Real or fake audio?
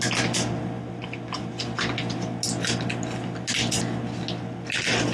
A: real